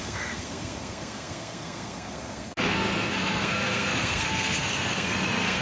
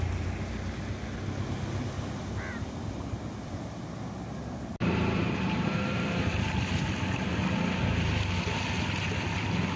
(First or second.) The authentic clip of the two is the second